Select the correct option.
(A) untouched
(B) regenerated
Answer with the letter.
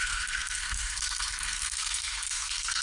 B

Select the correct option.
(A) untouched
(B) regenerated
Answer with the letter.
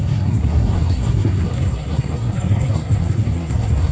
B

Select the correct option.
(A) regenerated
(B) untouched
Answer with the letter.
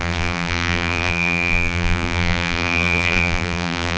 A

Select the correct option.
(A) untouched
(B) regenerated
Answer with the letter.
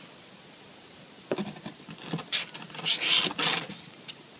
A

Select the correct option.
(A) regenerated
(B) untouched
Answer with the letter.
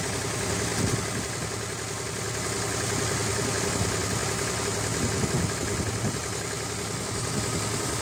B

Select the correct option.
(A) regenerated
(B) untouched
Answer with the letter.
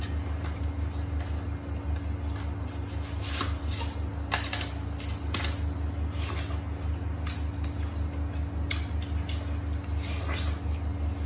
B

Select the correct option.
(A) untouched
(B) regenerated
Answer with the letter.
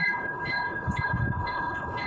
B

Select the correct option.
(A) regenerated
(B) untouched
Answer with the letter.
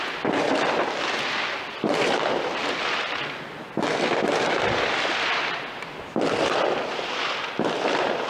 A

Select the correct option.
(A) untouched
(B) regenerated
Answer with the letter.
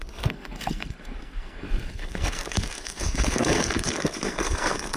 B